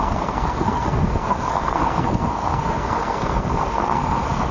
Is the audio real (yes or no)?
no